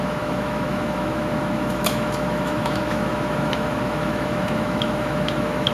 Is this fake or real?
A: fake